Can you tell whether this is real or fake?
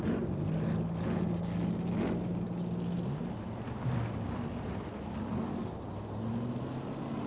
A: real